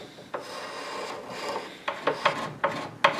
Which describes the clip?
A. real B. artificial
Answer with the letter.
A